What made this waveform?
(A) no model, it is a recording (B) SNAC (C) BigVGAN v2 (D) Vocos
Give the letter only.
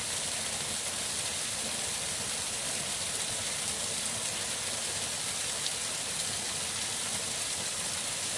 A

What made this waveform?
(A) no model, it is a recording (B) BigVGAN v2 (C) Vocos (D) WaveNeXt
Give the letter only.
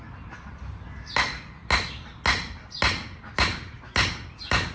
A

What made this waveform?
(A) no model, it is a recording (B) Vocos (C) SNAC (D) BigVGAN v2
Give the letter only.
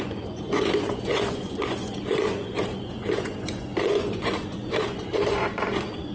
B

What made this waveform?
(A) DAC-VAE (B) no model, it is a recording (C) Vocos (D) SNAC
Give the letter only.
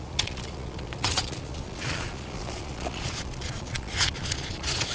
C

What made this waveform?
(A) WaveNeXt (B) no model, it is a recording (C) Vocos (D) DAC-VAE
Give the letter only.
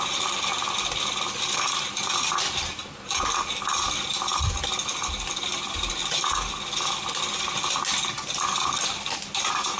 B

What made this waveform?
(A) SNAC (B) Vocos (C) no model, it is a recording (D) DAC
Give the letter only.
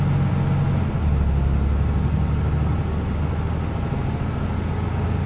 C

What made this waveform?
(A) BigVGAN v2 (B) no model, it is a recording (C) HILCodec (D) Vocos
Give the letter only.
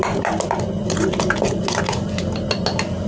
B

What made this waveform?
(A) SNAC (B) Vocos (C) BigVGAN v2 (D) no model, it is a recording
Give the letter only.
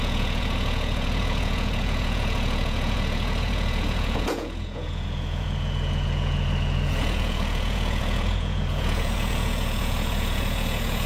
B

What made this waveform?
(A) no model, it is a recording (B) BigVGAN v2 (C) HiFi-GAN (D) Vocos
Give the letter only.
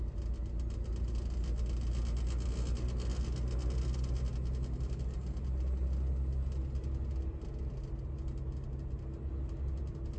A